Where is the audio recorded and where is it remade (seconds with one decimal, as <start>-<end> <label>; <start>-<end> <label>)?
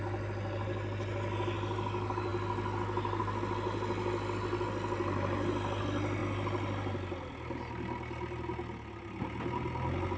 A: 0.0-10.2 recorded